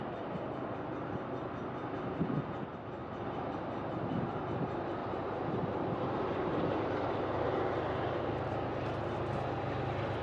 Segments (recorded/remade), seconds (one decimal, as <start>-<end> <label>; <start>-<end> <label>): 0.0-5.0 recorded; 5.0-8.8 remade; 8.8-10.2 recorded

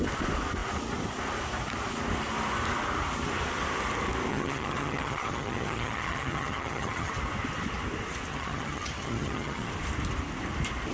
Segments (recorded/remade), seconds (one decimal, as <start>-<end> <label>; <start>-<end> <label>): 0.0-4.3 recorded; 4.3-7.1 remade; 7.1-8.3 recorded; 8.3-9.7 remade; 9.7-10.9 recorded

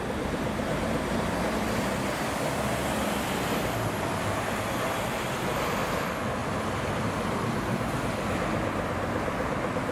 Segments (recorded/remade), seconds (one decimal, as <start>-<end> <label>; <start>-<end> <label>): 0.0-9.9 recorded

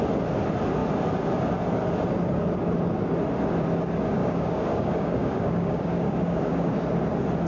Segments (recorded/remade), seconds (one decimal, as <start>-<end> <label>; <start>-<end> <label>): 0.0-4.2 recorded; 4.2-6.7 remade; 6.7-7.5 recorded